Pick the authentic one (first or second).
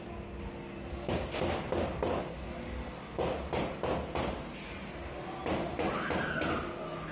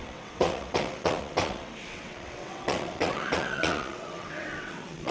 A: first